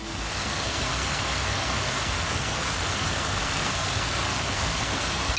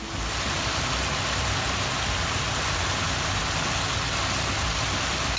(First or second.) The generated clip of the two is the first